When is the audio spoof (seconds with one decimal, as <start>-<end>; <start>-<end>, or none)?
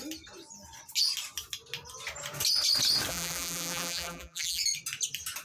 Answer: 3.1-4.6